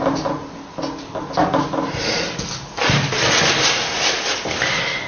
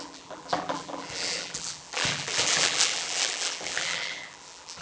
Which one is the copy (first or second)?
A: second